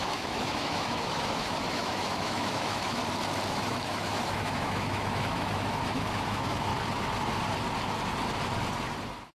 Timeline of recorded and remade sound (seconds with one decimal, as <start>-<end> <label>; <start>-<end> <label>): 0.0-3.0 remade; 3.0-3.5 recorded; 3.5-6.7 remade; 6.7-9.3 recorded